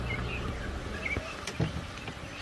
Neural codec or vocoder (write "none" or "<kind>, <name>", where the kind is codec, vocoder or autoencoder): none